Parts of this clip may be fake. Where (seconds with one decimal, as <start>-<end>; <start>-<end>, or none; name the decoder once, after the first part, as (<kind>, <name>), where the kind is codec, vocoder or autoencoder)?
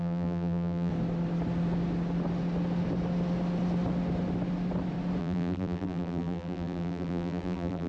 0.0-0.9 (vocoder, BigVGAN v2); 5.2-7.9